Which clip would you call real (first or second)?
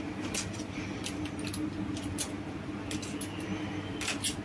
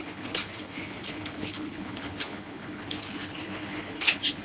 first